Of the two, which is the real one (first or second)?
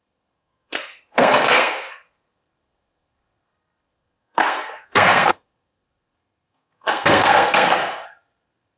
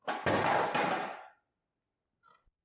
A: second